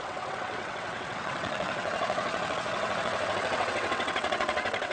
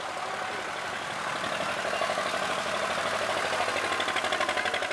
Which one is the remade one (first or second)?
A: first